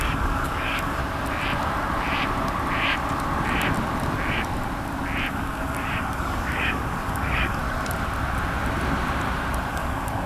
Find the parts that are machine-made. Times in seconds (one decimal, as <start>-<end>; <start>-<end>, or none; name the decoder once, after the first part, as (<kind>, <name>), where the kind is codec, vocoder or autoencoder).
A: 0.0-1.0 (codec, DAC); 5.3-7.6; 9.7-10.3